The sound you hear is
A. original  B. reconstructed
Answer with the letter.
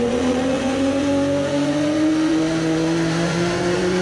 B